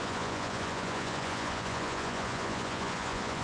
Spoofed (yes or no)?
yes